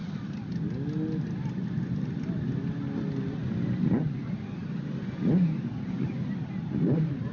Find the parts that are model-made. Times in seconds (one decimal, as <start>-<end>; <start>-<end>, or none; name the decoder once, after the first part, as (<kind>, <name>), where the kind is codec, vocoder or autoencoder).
none